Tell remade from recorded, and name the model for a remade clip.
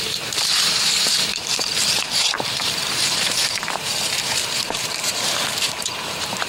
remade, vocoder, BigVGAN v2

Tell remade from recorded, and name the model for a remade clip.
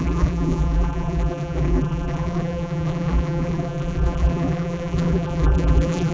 remade, vocoder, BigVGAN v2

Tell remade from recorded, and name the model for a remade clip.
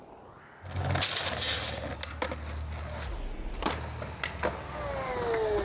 recorded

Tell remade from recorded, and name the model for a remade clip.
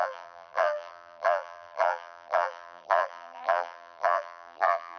remade, vocoder, BigVGAN v2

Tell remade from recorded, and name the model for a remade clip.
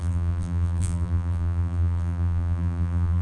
remade, vocoder, BigVGAN v2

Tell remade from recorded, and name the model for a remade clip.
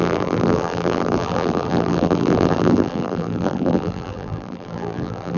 remade, vocoder, BigVGAN v2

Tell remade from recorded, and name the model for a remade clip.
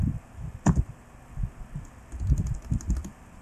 recorded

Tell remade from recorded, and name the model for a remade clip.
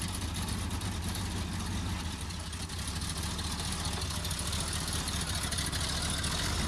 recorded